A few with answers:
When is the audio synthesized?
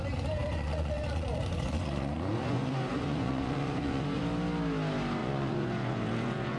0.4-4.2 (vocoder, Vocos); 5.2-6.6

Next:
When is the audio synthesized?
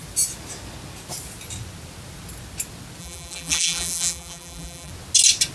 3.0-4.9 (vocoder, BigVGAN v2)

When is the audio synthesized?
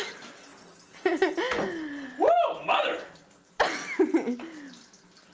none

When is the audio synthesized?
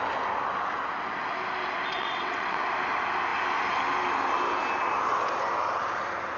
1.9-2.6 (vocoder, WaveNeXt)